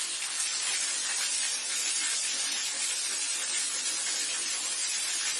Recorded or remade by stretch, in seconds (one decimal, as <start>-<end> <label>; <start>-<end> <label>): 0.0-5.4 recorded